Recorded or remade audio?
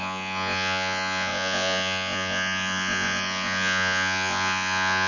remade